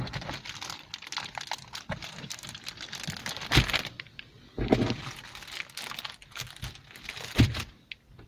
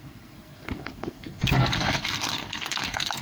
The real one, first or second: first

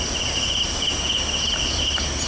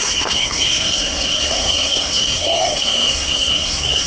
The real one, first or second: first